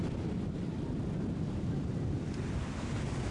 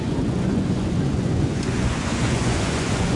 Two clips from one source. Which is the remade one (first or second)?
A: second